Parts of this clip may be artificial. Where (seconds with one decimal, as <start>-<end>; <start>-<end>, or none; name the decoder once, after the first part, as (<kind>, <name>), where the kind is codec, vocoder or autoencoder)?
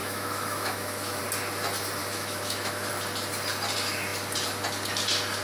0.0-1.2 (autoencoder, DAC-VAE); 2.0-2.9